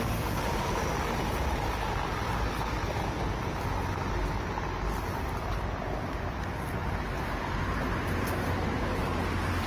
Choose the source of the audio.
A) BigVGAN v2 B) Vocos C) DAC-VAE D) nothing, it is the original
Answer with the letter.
D